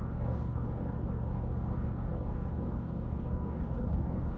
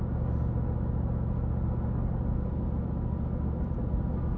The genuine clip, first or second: second